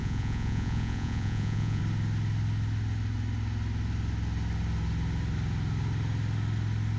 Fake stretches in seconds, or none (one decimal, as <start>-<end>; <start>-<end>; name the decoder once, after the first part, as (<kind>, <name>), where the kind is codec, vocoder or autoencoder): 0.0-1.8 (vocoder, Vocos)